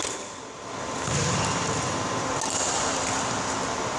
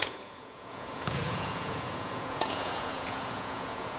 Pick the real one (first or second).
first